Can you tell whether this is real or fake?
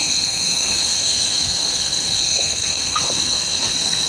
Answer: fake